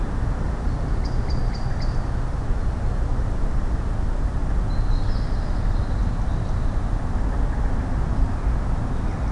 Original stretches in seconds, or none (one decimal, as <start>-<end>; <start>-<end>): 0.0-9.3